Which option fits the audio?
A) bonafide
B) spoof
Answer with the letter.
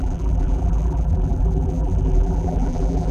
B